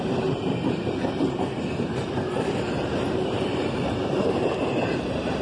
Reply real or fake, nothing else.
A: fake